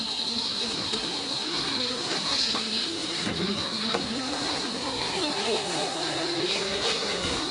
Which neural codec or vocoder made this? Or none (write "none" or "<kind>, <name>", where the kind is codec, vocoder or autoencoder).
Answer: codec, SNAC